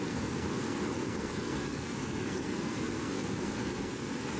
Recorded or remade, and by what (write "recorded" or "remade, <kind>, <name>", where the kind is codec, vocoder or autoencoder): remade, codec, SNAC